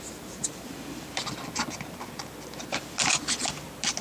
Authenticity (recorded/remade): recorded